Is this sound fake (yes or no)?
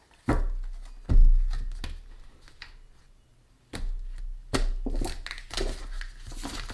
no